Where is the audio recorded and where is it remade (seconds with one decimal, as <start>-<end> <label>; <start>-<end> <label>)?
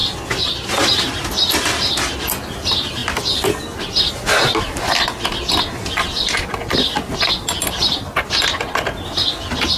0.0-9.8 recorded